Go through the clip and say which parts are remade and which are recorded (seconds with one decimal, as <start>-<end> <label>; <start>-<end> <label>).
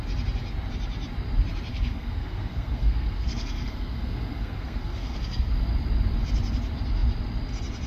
0.0-1.7 recorded; 1.7-5.5 remade; 5.5-7.9 recorded